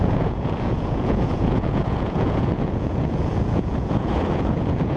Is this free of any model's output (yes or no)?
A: no